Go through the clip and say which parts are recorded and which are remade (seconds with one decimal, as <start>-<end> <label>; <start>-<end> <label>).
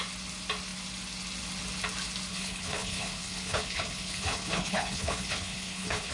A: 0.0-2.3 recorded; 2.3-6.1 remade